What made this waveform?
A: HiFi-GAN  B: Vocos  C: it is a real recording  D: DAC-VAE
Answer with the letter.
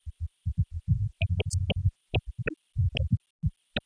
C